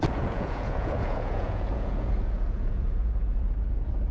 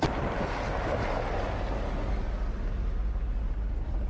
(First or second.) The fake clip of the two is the first